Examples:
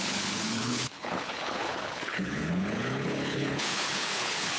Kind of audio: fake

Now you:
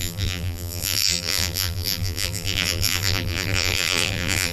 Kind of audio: fake